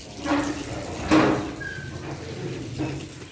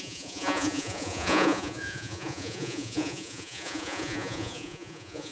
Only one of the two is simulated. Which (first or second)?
second